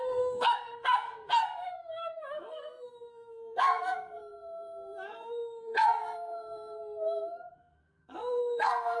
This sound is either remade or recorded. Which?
remade